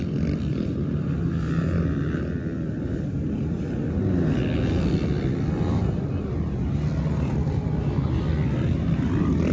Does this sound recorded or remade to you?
recorded